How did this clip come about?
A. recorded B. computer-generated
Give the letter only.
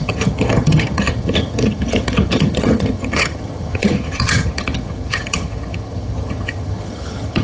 B